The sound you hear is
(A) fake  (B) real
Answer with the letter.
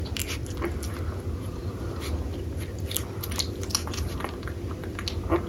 B